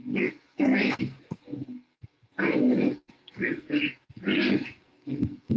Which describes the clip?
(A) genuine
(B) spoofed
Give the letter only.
B